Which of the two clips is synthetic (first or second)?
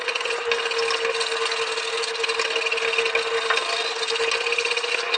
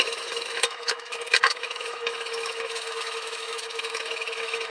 second